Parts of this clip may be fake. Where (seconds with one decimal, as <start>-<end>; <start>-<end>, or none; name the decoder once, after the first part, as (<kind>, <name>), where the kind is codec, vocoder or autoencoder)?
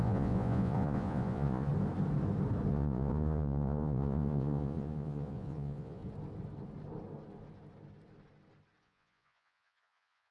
0.0-1.7 (vocoder, Vocos); 2.7-6.0; 8.8-10.3